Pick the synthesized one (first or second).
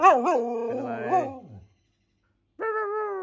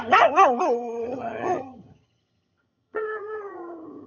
second